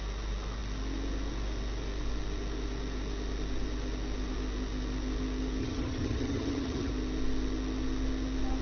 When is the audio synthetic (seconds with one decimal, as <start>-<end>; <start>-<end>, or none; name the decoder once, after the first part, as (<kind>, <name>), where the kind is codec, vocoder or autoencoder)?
5.6-6.9 (vocoder, HiFi-GAN)